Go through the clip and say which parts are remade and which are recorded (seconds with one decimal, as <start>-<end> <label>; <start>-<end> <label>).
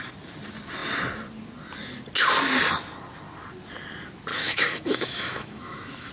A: 0.0-4.3 recorded; 4.3-6.1 remade